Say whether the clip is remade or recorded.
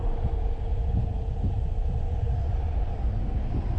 remade